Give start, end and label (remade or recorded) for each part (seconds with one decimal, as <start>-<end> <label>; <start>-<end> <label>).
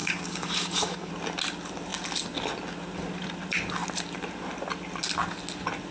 0.0-1.1 remade; 1.1-5.9 recorded